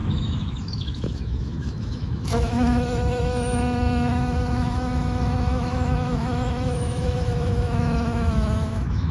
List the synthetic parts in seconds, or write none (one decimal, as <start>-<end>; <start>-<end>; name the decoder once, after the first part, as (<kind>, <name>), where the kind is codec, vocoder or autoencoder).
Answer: 0.0-9.1 (autoencoder, DAC-VAE)